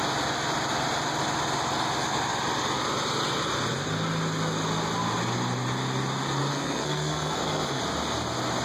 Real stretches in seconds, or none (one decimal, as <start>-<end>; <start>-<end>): 0.0-6.5; 7.8-8.6